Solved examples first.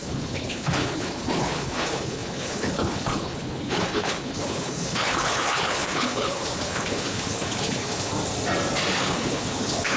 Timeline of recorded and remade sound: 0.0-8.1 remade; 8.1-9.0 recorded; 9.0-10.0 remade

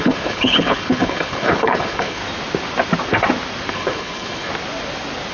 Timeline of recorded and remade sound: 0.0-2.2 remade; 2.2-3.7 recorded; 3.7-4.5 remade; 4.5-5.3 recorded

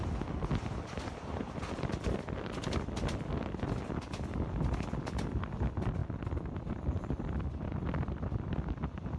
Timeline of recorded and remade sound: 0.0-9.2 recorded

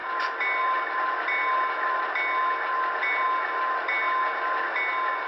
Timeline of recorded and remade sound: 0.0-5.3 recorded

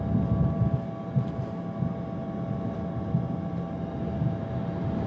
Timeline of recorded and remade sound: 0.0-5.1 recorded